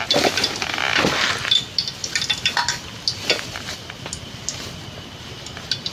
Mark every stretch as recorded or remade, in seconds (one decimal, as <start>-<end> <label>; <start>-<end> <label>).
0.0-5.9 recorded